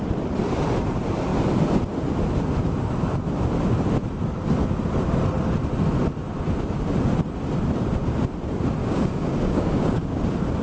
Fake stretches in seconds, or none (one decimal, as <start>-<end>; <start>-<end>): 8.8-10.2